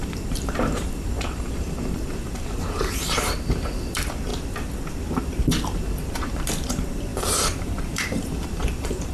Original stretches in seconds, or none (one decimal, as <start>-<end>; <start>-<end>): 4.3-5.2